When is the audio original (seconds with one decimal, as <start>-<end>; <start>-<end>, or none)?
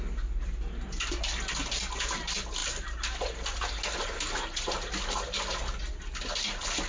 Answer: 0.0-6.9